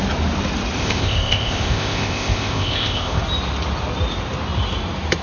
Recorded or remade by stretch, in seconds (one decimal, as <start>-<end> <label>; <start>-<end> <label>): 0.0-0.8 recorded; 0.8-3.2 remade; 3.2-5.2 recorded